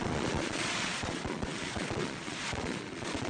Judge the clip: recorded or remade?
remade